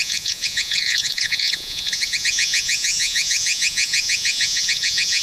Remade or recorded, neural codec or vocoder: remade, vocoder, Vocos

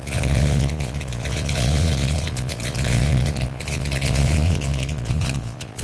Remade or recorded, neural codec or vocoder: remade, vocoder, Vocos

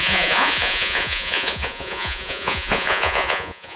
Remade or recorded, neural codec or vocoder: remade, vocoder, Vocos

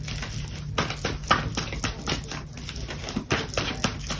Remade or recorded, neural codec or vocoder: recorded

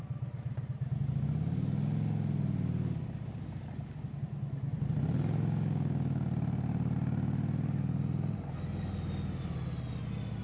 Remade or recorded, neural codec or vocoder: recorded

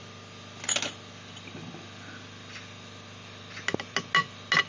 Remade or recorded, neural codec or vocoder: recorded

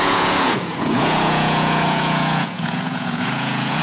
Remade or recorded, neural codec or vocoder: remade, vocoder, Vocos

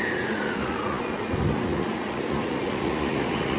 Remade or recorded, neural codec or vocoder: remade, vocoder, Vocos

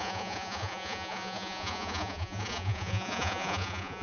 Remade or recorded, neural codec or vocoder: remade, vocoder, Vocos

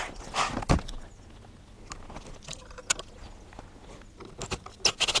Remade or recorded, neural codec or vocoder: recorded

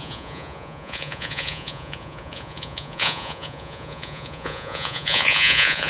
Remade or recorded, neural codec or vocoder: remade, vocoder, Vocos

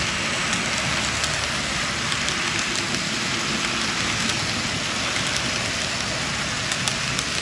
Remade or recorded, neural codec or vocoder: recorded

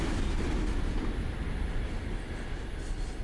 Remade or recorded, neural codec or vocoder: recorded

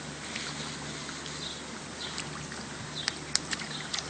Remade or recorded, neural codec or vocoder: recorded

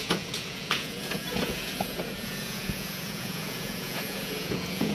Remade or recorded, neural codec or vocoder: remade, vocoder, Vocos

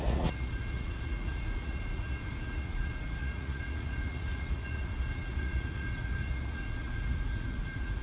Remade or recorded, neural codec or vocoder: remade, vocoder, Vocos